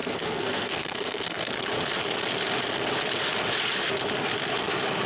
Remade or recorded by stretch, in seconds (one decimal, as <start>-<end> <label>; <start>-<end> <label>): 0.0-1.5 remade; 1.5-5.1 recorded